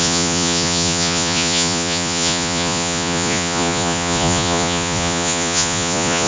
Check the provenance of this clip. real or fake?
fake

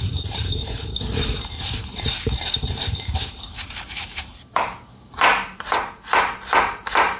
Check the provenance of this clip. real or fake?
fake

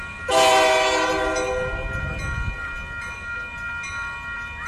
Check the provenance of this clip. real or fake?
real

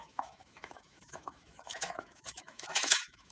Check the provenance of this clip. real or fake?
fake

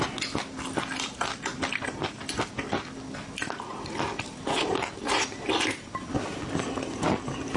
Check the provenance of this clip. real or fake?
real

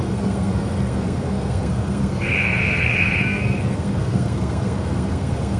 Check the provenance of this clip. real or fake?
fake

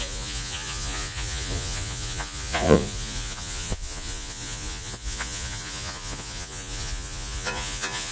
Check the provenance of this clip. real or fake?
fake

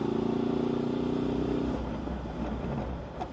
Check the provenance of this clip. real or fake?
real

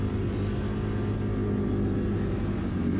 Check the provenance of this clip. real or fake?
real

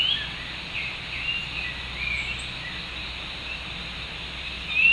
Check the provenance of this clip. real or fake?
real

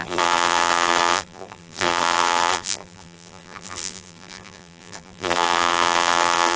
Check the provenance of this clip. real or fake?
fake